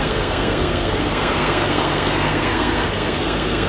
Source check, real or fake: fake